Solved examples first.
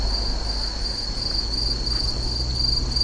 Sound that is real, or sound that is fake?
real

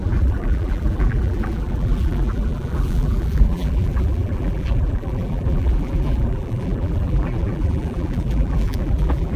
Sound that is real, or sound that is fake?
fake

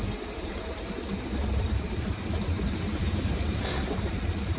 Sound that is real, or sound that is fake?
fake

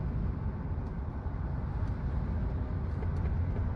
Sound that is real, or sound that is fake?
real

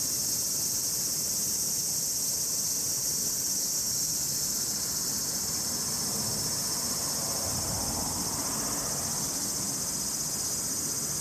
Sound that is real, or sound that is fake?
real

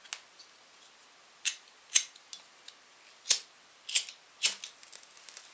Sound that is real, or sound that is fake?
real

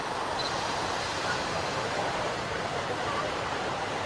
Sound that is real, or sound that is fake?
fake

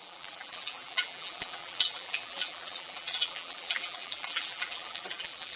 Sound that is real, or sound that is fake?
fake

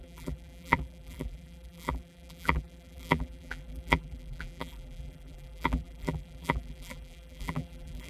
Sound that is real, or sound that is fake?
fake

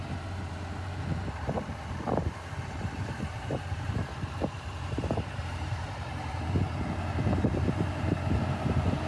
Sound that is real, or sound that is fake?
fake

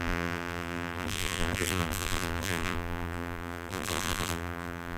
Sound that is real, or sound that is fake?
fake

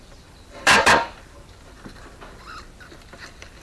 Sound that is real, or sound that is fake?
fake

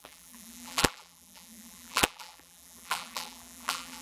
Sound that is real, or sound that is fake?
fake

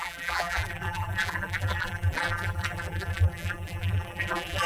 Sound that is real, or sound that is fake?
fake